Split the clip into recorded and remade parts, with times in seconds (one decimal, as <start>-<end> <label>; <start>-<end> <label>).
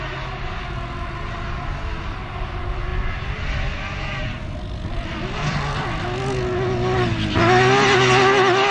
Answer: 0.0-8.7 recorded